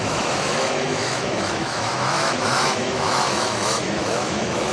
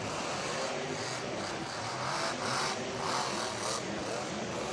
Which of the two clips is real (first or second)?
second